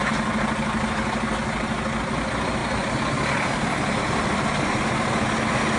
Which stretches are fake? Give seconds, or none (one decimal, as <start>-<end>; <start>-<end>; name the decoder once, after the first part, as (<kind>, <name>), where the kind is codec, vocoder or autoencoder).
none